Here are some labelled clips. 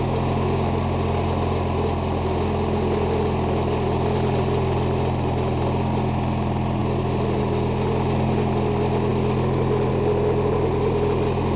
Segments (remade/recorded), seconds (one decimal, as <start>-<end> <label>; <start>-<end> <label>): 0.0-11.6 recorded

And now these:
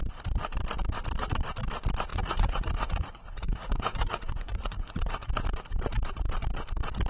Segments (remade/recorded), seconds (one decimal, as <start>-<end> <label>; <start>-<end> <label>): 0.0-2.1 recorded; 2.1-5.3 remade; 5.3-7.1 recorded

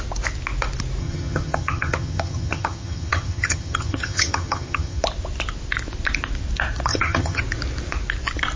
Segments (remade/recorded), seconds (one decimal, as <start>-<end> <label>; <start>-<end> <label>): 0.0-1.0 recorded; 1.0-5.0 remade; 5.0-6.9 recorded; 6.9-7.4 remade; 7.4-8.6 recorded

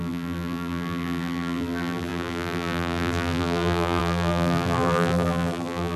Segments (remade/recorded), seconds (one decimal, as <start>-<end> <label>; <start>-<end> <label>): 0.0-6.0 remade

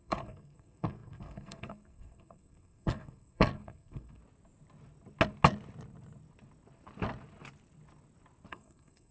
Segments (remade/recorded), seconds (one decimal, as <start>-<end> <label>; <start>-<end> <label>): 0.0-4.2 remade; 4.2-8.5 recorded; 8.5-9.1 remade